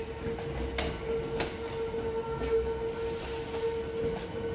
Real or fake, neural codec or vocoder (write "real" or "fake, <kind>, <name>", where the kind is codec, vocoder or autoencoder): real